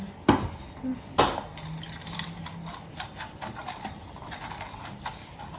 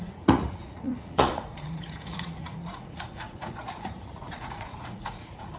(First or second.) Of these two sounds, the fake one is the second